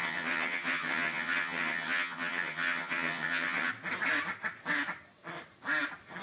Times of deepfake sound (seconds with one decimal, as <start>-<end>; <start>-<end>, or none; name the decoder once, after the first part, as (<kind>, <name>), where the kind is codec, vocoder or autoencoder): 0.0-3.7 (vocoder, HiFi-GAN)